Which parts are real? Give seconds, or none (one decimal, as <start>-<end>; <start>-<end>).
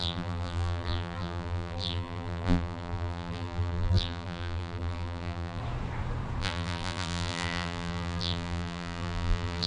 5.6-6.4